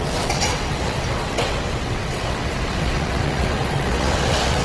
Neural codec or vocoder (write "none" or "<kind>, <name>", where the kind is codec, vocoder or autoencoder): vocoder, WaveNeXt